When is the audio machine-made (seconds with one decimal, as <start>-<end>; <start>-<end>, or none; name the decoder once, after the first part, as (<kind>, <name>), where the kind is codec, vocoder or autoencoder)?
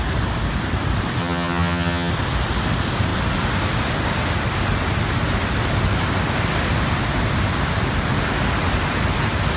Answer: 1.2-2.1 (vocoder, HiFi-GAN)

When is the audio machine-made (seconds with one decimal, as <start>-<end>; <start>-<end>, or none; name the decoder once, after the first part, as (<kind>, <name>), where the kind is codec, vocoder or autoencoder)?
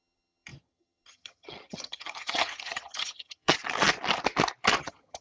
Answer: 0.0-3.6 (vocoder, HiFi-GAN); 4.8-5.2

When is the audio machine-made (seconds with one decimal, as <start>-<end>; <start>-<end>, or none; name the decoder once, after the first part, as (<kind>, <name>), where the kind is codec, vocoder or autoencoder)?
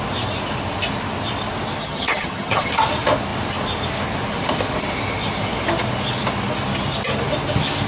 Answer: 1.8-2.7 (vocoder, HiFi-GAN)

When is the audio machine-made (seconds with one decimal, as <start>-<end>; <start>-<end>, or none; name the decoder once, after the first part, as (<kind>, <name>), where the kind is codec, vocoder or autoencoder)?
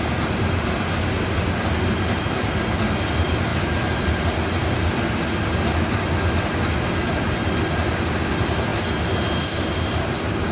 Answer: none